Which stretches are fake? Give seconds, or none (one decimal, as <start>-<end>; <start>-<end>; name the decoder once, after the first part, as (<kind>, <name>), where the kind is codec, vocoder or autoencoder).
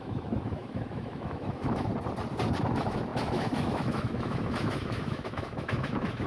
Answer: 0.0-1.9 (autoencoder, DAC-VAE); 2.6-6.3